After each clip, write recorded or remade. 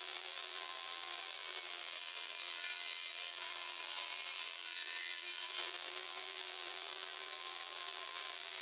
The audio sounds remade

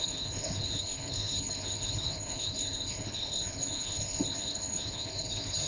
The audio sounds remade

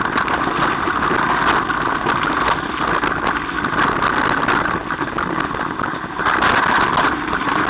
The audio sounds recorded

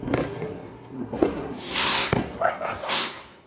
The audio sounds remade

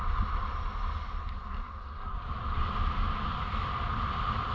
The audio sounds recorded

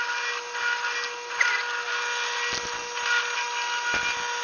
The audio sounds recorded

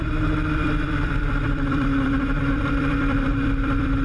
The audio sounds remade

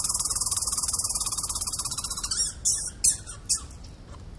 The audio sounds recorded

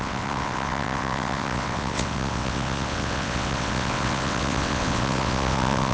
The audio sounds remade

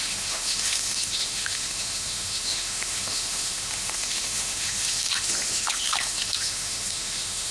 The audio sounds remade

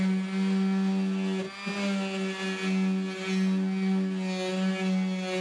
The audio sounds recorded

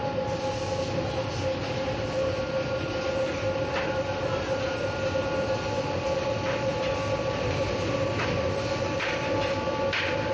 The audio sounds recorded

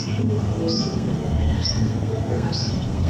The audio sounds remade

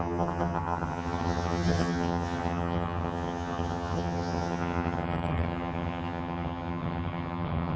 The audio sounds remade